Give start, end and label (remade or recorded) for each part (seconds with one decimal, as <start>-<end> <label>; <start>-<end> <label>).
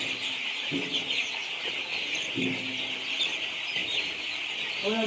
0.0-5.1 recorded